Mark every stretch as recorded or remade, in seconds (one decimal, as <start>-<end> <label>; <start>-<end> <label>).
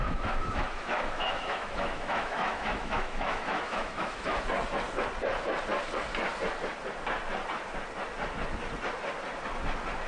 0.0-4.4 remade; 4.4-10.1 recorded